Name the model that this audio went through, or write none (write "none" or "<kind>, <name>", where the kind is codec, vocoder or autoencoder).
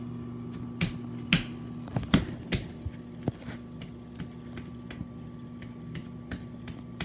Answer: none